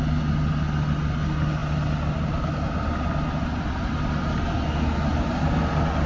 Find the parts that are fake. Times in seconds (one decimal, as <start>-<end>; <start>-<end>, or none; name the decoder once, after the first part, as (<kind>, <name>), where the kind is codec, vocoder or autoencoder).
none